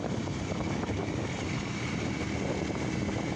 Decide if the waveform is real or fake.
real